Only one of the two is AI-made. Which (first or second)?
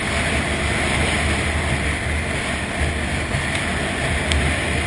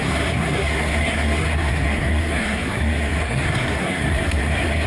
second